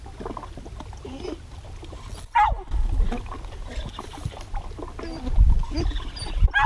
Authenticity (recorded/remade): recorded